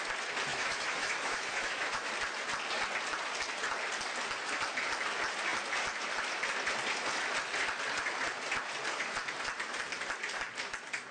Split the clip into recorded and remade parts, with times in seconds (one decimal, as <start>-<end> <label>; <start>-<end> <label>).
0.0-0.5 recorded; 0.5-2.1 remade; 2.1-11.1 recorded